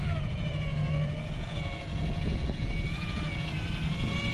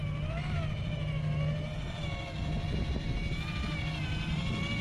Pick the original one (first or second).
second